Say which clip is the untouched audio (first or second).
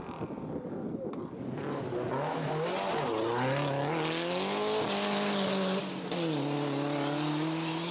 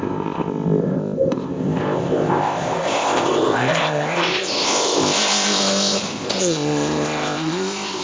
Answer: first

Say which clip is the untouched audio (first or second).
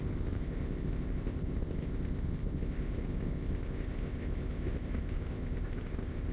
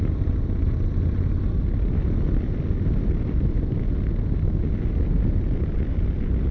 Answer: second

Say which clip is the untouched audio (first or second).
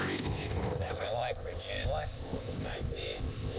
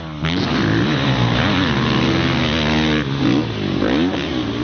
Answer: second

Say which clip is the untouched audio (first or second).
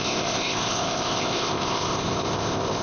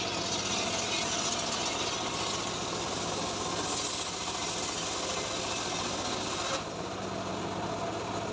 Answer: second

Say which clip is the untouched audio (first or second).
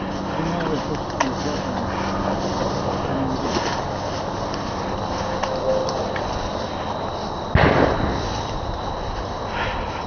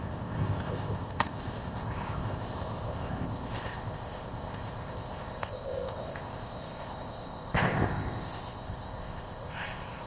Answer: first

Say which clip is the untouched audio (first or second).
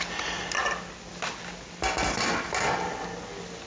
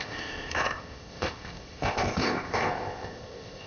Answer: first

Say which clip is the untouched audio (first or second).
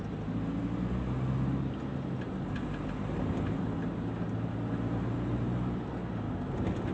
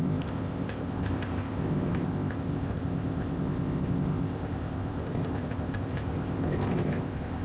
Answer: first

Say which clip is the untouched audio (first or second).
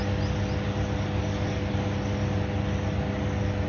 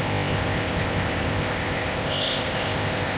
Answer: first